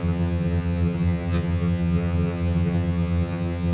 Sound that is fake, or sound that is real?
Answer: fake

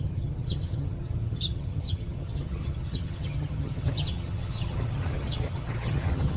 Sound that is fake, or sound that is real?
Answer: fake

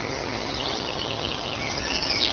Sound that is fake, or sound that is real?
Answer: fake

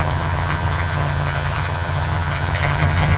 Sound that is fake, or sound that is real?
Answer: fake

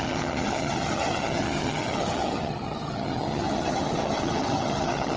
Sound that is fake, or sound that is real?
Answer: fake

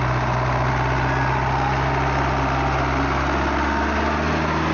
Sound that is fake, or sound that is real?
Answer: real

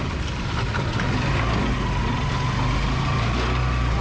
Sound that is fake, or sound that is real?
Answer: real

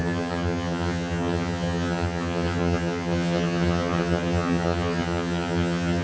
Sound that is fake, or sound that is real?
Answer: fake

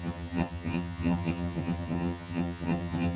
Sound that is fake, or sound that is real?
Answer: fake